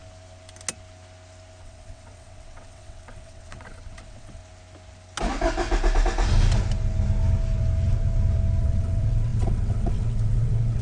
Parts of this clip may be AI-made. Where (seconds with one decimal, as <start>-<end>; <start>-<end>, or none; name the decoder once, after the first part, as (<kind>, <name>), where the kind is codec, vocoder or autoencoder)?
1.6-4.4 (vocoder, WaveNeXt); 8.6-10.8